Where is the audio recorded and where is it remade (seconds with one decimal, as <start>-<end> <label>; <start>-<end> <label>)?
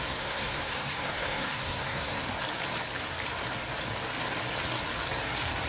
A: 0.0-2.2 remade; 2.2-5.7 recorded